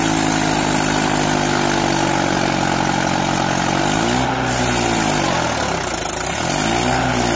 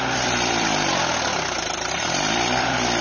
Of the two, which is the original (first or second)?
first